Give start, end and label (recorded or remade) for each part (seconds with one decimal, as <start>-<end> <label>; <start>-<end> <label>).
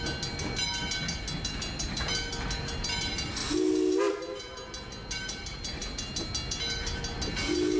0.0-7.8 recorded